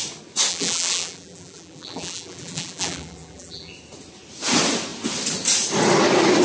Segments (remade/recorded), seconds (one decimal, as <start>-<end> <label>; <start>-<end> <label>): 0.0-0.5 recorded; 0.5-3.7 remade; 3.7-6.4 recorded